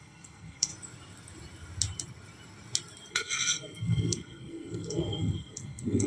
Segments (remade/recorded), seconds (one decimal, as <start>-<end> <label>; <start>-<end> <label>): 0.0-0.7 remade; 0.7-3.1 recorded; 3.1-6.1 remade